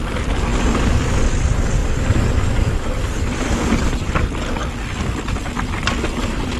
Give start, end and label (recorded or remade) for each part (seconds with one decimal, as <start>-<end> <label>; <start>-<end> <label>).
0.0-0.5 recorded; 0.5-1.1 remade; 1.1-1.8 recorded; 1.8-4.6 remade; 4.6-6.6 recorded